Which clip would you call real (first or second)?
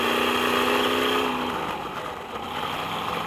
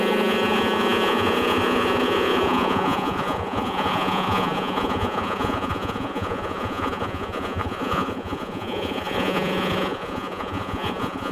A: first